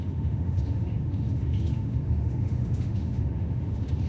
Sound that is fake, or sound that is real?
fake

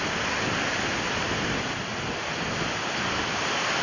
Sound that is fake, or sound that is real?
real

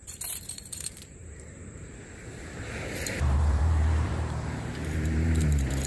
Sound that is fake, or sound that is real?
fake